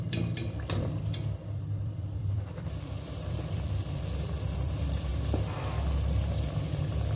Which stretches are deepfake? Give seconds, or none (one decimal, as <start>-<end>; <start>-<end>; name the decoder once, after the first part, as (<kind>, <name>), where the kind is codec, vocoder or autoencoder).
0.0-5.1 (vocoder, BigVGAN v2); 6.6-7.2